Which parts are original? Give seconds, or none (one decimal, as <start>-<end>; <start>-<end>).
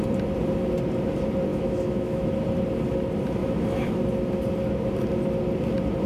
0.0-1.5; 2.3-3.4; 4.0-6.1